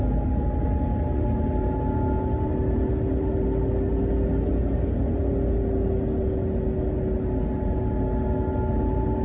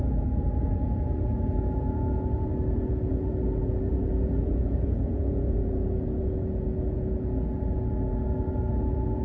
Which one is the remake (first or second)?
second